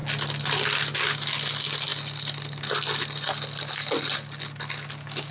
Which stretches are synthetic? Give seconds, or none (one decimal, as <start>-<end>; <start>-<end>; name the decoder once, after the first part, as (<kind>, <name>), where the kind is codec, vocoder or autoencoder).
none